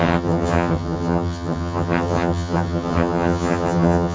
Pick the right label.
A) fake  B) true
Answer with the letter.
A